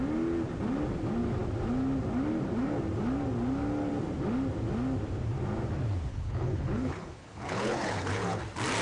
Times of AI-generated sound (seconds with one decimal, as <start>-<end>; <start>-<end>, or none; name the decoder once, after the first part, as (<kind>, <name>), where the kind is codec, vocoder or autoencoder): 6.1-8.4 (codec, HILCodec)